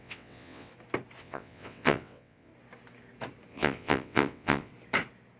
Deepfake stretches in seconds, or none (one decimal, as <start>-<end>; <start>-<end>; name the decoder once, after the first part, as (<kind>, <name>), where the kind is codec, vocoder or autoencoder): 0.0-0.7 (vocoder, WaveNeXt); 1.2-2.5; 3.5-4.7